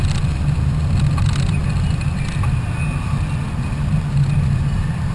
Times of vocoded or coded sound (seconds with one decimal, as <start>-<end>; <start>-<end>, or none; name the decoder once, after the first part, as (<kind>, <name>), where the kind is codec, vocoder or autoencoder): none